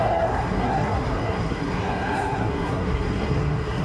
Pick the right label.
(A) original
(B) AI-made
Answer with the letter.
B